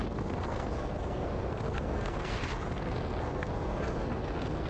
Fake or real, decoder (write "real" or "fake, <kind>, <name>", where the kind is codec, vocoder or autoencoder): fake, codec, SNAC